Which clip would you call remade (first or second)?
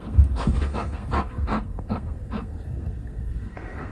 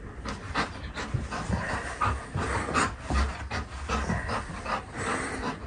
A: first